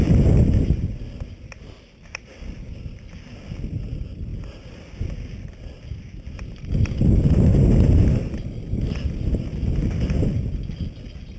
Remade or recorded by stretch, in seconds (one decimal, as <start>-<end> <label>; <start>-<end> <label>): 0.0-11.4 recorded